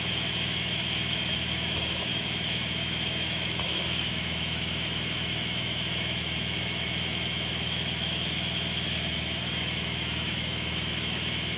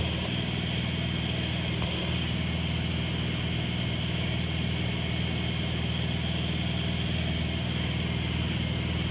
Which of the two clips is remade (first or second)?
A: first